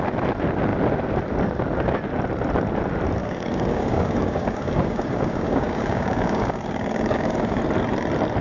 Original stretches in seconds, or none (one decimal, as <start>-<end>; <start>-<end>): 0.0-3.2; 7.6-8.4